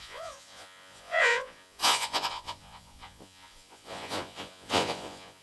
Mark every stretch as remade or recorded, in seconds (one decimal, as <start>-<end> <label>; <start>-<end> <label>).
0.0-5.4 remade